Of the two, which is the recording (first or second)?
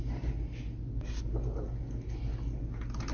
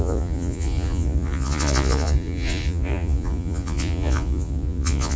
first